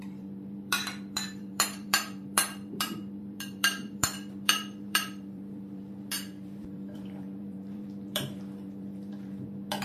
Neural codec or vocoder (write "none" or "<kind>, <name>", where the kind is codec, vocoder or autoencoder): vocoder, BigVGAN v2